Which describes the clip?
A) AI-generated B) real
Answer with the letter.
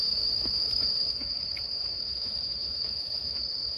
A